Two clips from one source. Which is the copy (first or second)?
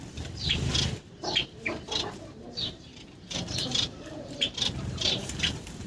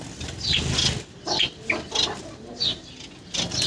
first